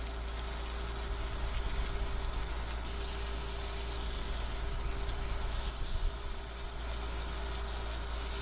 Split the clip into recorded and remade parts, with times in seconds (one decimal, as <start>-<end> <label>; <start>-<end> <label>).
0.0-5.7 recorded; 5.7-6.8 remade; 6.8-8.4 recorded